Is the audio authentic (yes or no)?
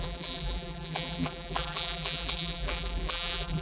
no